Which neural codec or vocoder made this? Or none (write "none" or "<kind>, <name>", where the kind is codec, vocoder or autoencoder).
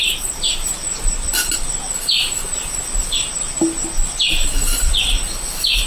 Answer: none